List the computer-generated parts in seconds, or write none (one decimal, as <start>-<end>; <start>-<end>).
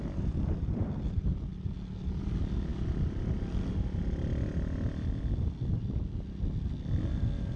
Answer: none